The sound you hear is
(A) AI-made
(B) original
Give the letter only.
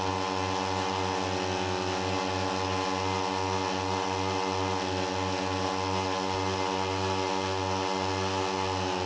B